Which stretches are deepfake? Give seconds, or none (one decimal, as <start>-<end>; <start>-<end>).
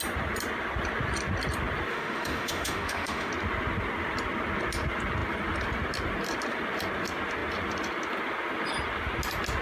1.9-3.3